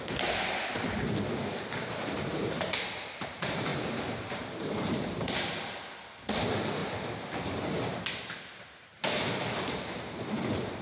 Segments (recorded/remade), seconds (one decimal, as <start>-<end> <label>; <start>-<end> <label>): 0.0-6.8 remade; 6.8-8.4 recorded; 8.4-10.8 remade

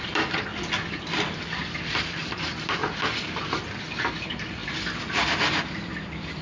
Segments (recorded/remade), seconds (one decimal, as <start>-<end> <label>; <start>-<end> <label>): 0.0-0.5 remade; 0.5-1.9 recorded; 1.9-2.8 remade; 2.8-4.1 recorded; 4.1-4.6 remade; 4.6-5.3 recorded; 5.3-6.4 remade